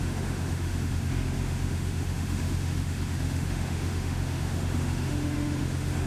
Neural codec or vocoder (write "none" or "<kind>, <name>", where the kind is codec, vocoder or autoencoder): autoencoder, DAC-VAE